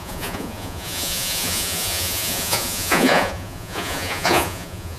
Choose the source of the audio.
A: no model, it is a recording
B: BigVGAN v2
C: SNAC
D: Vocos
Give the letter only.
D